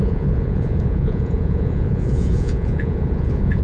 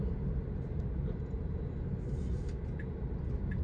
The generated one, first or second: first